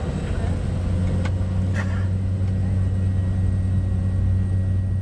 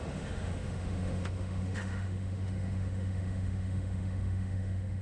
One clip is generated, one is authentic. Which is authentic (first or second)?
first